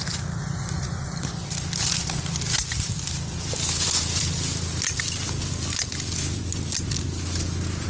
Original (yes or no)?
yes